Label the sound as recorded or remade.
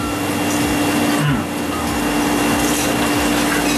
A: recorded